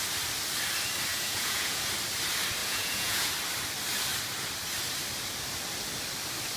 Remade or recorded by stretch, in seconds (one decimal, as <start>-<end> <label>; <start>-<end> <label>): 0.0-1.1 recorded; 1.1-1.8 remade; 1.8-2.6 recorded; 2.6-3.3 remade; 3.3-6.6 recorded